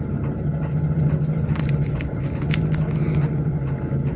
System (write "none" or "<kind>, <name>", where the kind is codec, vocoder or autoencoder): none